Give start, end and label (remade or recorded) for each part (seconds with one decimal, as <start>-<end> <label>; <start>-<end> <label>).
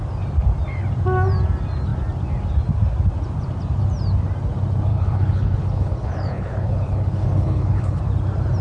0.0-4.9 recorded; 4.9-8.0 remade; 8.0-8.6 recorded